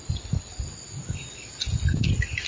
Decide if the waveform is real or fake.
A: real